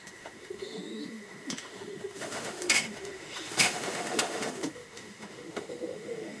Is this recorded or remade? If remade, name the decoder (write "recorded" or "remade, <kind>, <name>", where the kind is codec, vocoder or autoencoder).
remade, autoencoder, DAC-VAE